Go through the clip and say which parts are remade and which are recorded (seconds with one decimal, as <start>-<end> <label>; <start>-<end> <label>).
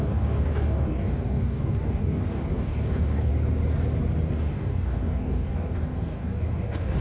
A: 0.0-3.3 remade; 3.3-4.3 recorded; 4.3-7.0 remade